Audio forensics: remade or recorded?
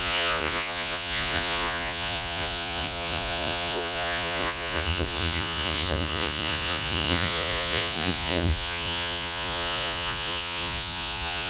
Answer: remade